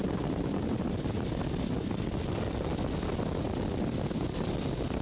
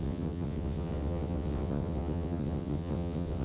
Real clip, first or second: first